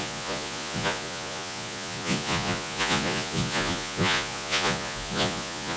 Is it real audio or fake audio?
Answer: fake